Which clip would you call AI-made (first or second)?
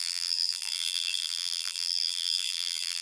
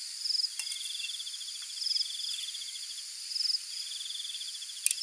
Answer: first